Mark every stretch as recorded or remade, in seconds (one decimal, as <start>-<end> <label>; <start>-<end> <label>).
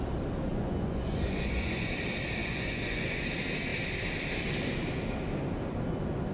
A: 0.0-0.5 recorded; 0.5-1.9 remade; 1.9-2.4 recorded; 2.4-3.2 remade; 3.2-6.3 recorded